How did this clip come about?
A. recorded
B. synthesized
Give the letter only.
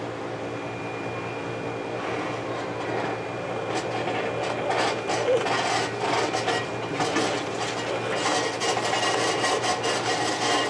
A